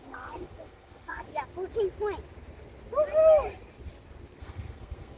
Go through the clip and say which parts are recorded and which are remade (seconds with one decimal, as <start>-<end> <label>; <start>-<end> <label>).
0.0-1.3 remade; 1.3-4.4 recorded; 4.4-5.2 remade